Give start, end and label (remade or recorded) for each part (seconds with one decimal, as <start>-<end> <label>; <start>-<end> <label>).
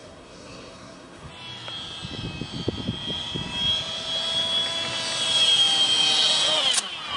0.0-1.3 remade; 1.3-7.2 recorded